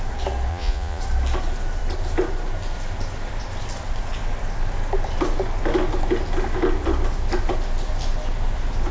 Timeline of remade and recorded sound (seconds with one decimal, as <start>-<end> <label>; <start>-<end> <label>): 0.0-0.5 recorded; 0.5-1.0 remade; 1.0-8.9 recorded